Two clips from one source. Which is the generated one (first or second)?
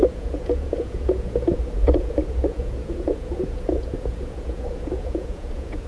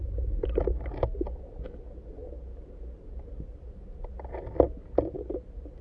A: first